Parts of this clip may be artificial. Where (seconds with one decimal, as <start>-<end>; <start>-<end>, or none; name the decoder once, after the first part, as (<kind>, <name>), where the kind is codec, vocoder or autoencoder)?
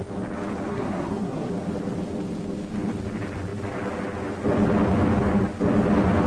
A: 0.7-1.5 (codec, SNAC)